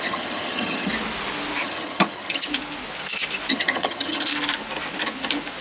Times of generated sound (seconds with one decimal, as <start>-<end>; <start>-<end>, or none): 0.0-0.9; 1.6-2.5; 3.5-4.3